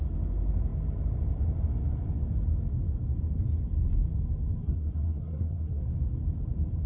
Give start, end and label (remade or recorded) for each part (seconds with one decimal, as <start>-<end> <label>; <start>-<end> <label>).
0.0-4.6 recorded; 4.6-5.8 remade; 5.8-6.9 recorded